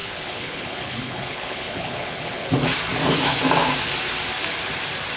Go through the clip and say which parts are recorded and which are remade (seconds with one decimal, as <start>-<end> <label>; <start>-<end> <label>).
0.0-2.5 remade; 2.5-5.2 recorded